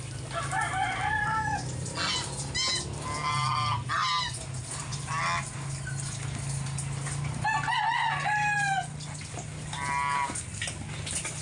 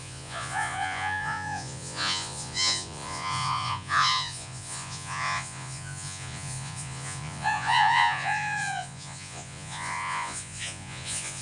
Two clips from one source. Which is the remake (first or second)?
second